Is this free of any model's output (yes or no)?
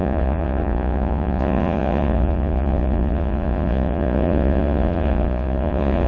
no